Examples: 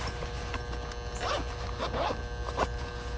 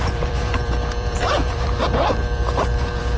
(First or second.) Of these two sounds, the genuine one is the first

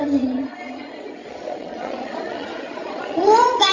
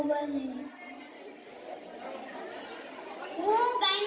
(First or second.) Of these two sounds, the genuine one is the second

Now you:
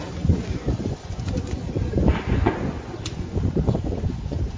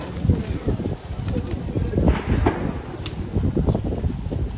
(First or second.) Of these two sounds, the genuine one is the second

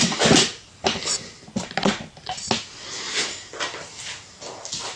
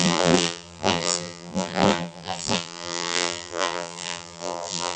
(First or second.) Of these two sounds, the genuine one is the first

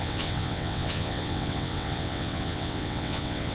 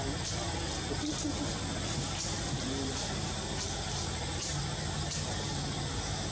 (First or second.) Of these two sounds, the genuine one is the second